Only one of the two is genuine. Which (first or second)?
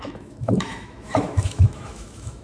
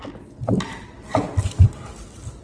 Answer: second